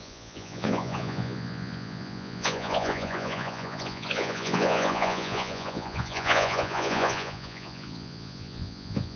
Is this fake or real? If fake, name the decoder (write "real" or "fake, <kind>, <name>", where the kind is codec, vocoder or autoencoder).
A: fake, vocoder, Vocos